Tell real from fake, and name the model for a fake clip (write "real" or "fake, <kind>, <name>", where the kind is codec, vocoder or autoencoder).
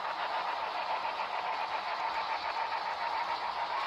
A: real